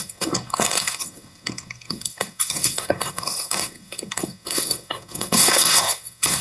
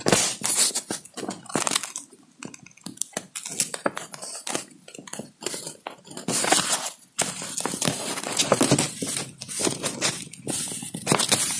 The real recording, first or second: second